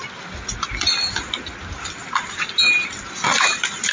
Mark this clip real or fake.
real